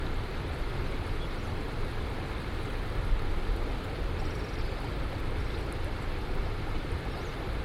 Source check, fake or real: real